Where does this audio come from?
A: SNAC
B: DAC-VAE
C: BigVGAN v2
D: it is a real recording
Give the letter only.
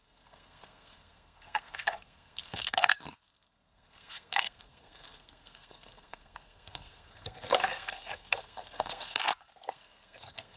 A